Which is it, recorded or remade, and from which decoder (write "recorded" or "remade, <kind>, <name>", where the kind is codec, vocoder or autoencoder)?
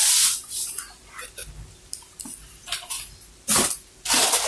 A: recorded